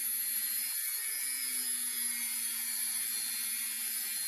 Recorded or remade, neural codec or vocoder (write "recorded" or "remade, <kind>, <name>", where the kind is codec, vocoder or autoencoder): recorded